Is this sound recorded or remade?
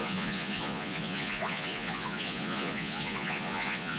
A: remade